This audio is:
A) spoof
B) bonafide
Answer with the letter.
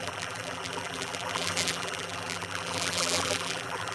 A